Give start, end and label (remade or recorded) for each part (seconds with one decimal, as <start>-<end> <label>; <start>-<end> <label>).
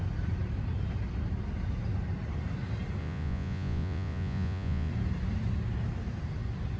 0.0-3.0 recorded; 3.0-4.9 remade; 4.9-6.8 recorded